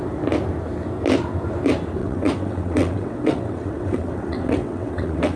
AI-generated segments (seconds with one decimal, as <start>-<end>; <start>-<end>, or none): 2.0-5.4